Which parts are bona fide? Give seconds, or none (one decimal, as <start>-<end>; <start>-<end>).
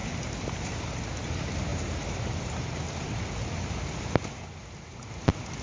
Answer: 0.0-1.7; 3.2-5.6